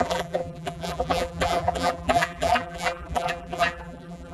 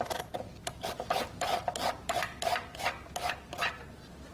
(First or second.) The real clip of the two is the second